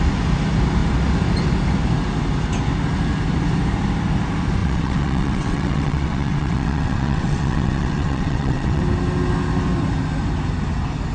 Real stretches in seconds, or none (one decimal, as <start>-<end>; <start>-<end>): 0.0-4.6; 8.8-11.1